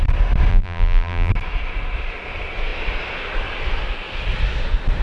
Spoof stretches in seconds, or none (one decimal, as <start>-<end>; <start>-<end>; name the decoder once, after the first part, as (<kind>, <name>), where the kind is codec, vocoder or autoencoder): 0.5-1.3 (vocoder, BigVGAN v2)